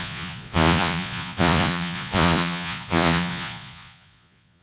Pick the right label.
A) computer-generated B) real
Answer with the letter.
A